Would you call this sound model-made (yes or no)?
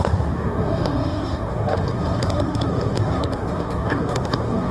yes